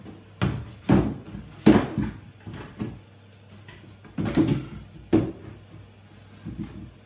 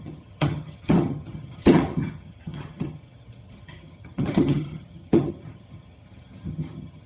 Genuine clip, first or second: first